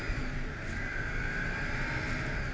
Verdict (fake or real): real